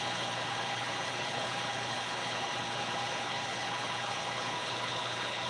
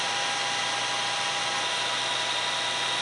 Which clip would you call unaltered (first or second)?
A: second